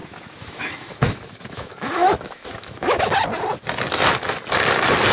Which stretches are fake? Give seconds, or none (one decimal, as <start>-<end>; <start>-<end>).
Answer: 0.0-3.1